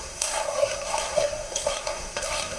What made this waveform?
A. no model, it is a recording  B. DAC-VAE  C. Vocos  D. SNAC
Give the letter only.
D